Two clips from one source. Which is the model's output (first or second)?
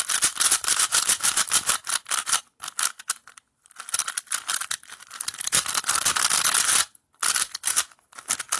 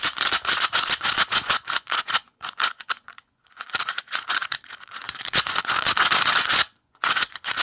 second